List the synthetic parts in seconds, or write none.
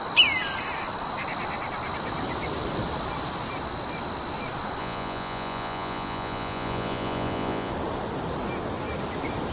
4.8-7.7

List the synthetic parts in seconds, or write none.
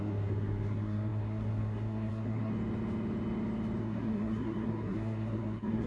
0.0-2.5; 3.8-5.9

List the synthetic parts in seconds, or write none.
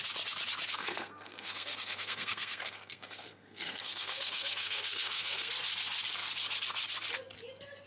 0.8-5.5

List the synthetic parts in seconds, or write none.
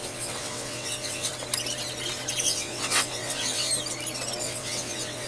0.0-1.3; 2.4-3.7; 4.4-5.3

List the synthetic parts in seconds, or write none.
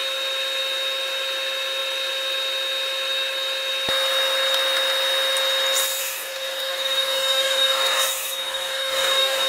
6.0-9.5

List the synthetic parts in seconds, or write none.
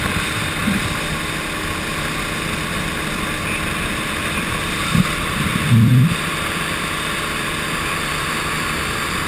0.0-0.6; 3.9-5.9; 6.7-9.3